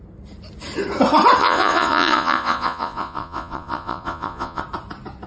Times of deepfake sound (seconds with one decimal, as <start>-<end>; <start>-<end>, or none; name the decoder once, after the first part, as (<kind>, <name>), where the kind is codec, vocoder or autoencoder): 1.4-4.6 (vocoder, Vocos)